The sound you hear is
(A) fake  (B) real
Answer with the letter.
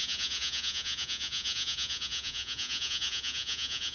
A